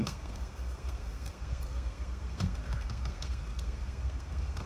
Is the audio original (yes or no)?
no